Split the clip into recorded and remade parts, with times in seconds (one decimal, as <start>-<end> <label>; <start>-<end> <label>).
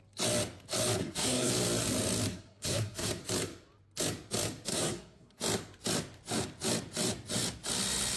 0.0-1.0 recorded; 1.0-1.5 remade; 1.5-2.3 recorded; 2.3-3.2 remade; 3.2-4.7 recorded; 4.7-5.4 remade; 5.4-8.2 recorded